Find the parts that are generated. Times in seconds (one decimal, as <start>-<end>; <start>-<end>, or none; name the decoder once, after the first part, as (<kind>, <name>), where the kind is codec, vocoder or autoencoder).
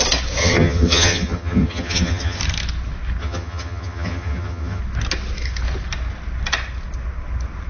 0.4-2.4 (vocoder, HiFi-GAN); 3.2-4.8